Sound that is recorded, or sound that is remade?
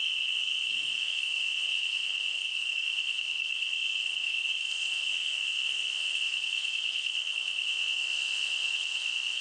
remade